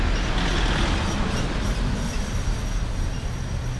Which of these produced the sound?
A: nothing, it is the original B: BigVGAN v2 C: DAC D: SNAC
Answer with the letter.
A